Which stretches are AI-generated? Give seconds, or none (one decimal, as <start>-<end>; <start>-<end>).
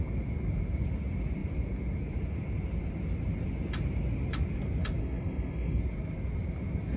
5.0-5.8